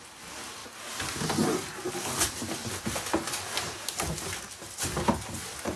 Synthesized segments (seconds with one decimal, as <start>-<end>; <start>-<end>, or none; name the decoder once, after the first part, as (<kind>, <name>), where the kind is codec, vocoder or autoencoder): none

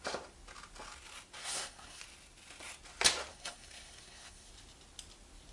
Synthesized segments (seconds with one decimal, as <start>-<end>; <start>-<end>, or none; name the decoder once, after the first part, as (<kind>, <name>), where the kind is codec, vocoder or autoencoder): 1.4-2.0 (codec, SNAC); 3.3-4.5